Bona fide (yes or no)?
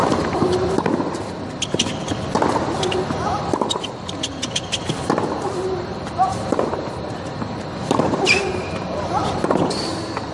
no